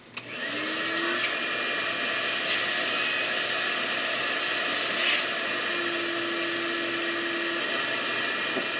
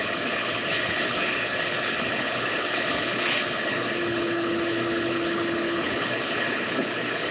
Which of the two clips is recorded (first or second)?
first